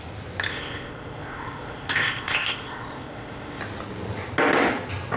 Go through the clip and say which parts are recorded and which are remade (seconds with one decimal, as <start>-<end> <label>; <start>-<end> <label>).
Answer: 0.0-0.5 recorded; 0.5-3.6 remade; 3.6-5.2 recorded